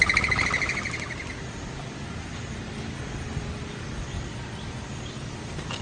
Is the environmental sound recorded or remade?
recorded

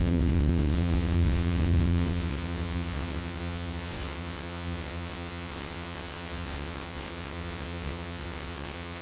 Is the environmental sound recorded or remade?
remade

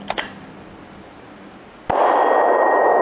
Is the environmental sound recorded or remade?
recorded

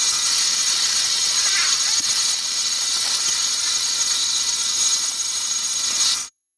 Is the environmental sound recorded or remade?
remade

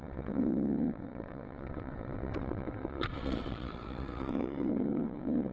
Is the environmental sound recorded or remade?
remade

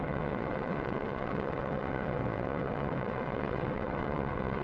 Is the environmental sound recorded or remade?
remade